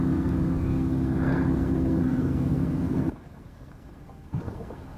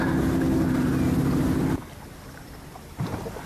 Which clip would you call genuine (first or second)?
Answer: second